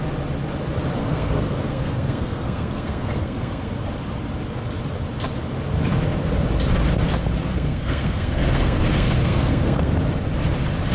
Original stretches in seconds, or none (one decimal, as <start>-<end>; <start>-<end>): 0.0-1.0; 3.7-7.5; 9.9-10.9